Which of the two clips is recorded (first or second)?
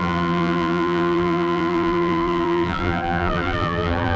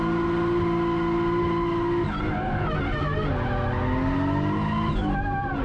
second